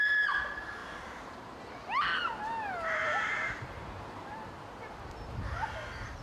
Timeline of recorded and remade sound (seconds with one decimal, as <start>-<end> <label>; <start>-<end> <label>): 0.0-0.8 recorded; 0.8-1.6 remade; 1.6-3.0 recorded; 3.0-4.5 remade; 4.5-6.2 recorded